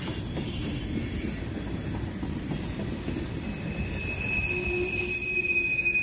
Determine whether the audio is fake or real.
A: real